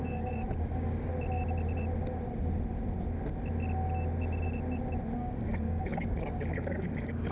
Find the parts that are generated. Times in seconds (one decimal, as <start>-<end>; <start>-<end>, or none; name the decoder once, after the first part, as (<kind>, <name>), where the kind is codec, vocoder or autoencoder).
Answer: 0.0-1.1 (codec, DAC); 5.2-7.3